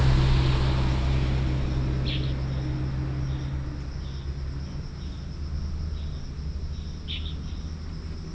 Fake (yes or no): no